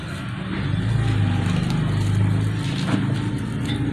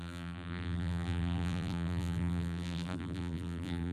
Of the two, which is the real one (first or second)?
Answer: first